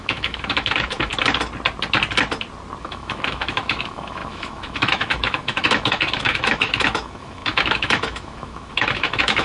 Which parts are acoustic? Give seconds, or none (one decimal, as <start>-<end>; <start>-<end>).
1.1-2.8